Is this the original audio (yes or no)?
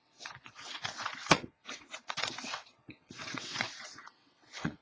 no